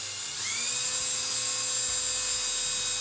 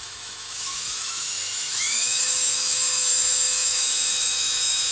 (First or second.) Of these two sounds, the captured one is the first